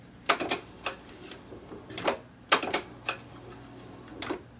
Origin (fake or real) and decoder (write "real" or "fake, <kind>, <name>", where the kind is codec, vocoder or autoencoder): fake, vocoder, BigVGAN v2